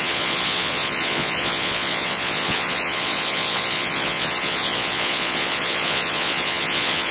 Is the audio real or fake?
fake